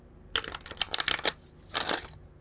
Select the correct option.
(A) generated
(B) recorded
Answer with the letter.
B